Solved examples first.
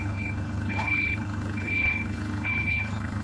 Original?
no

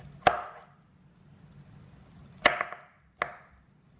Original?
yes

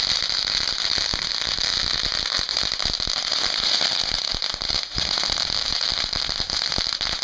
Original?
yes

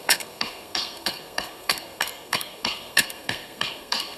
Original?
no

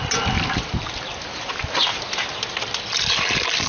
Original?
yes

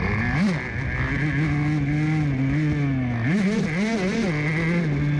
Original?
yes